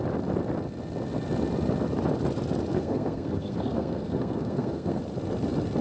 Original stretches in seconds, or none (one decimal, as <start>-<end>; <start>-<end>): 0.0-2.7; 5.0-5.8